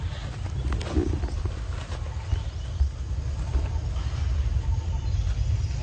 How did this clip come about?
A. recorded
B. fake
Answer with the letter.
A